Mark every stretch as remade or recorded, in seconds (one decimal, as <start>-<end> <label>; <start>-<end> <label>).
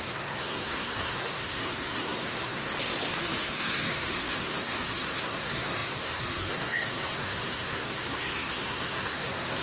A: 0.0-2.7 remade; 2.7-3.4 recorded; 3.4-9.6 remade